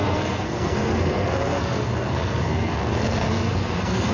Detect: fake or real fake